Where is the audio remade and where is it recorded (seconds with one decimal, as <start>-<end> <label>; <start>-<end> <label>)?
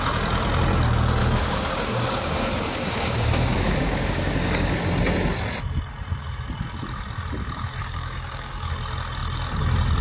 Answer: 0.0-1.2 recorded; 1.2-4.8 remade; 4.8-7.8 recorded; 7.8-8.7 remade; 8.7-10.0 recorded